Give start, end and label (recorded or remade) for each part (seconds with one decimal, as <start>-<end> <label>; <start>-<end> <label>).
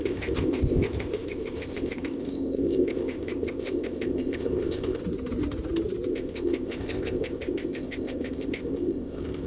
0.0-5.0 remade; 5.0-6.1 recorded; 6.1-9.5 remade